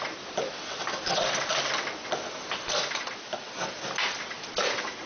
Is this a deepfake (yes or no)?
no